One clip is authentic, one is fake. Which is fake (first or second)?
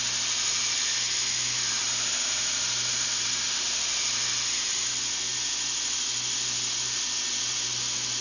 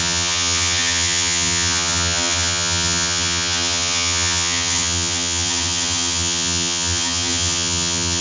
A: second